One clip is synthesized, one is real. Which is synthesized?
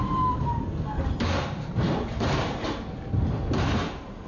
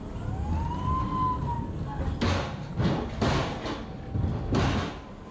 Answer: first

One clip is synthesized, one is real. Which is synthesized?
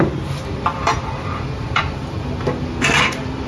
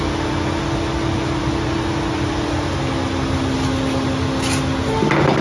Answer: first